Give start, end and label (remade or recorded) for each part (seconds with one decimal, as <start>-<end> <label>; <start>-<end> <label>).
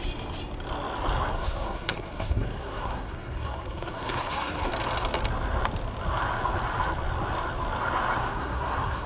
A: 0.0-1.3 recorded; 1.3-4.7 remade; 4.7-8.2 recorded; 8.2-9.1 remade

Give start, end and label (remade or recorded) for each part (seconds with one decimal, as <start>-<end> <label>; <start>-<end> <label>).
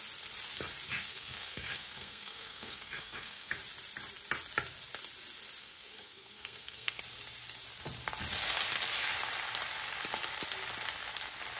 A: 0.0-0.9 recorded; 0.9-3.5 remade; 3.5-5.6 recorded; 5.6-7.0 remade; 7.0-11.6 recorded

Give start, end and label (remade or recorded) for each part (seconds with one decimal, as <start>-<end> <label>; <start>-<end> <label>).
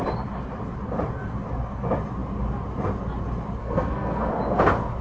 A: 0.0-3.6 recorded; 3.6-4.3 remade; 4.3-5.0 recorded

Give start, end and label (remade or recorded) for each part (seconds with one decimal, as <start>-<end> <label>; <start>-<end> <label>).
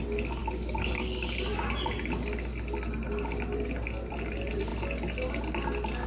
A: 0.0-6.1 recorded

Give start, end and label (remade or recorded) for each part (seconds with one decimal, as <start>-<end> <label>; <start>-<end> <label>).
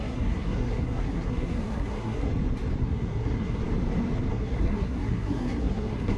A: 0.0-2.3 remade; 2.3-2.8 recorded; 2.8-3.6 remade; 3.6-4.3 recorded; 4.3-6.2 remade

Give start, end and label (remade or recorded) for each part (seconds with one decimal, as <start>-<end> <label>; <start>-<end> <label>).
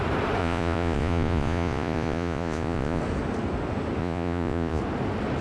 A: 0.0-0.4 recorded; 0.4-3.0 remade; 3.0-4.0 recorded; 4.0-4.8 remade; 4.8-5.4 recorded